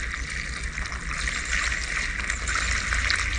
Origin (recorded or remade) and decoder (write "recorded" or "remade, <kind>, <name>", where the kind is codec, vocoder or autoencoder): recorded